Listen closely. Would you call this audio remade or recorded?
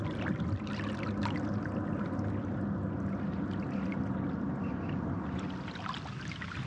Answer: recorded